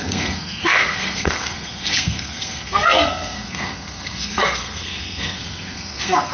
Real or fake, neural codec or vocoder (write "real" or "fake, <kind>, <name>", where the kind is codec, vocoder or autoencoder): fake, codec, SNAC